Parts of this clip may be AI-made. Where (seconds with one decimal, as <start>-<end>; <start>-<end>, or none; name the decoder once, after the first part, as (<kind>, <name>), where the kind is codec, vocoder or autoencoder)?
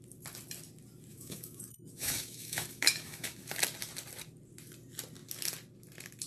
1.1-3.5 (autoencoder, DAC-VAE)